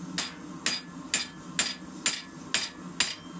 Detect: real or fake real